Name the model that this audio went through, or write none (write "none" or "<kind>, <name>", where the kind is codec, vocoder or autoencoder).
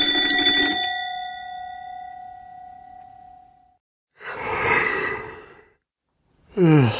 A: none